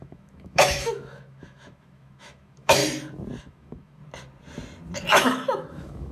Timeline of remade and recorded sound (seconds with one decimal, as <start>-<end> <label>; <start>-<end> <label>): 0.0-2.8 remade; 2.8-3.4 recorded; 3.4-4.0 remade; 4.0-5.1 recorded; 5.1-6.1 remade